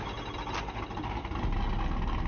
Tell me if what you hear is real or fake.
real